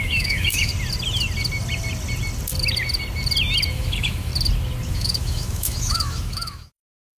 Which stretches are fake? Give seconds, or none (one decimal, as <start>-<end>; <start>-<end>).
0.0-0.7; 3.7-4.3; 4.9-7.2